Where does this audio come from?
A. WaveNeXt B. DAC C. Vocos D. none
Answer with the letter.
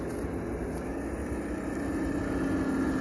D